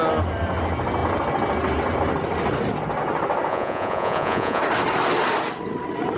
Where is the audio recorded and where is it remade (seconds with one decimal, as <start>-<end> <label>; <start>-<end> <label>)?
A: 0.0-3.5 recorded; 3.5-4.6 remade; 4.6-6.2 recorded